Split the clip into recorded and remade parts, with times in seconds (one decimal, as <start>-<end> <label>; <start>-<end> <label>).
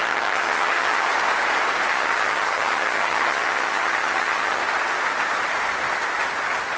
0.0-1.1 remade; 1.1-1.9 recorded; 1.9-4.6 remade; 4.6-6.8 recorded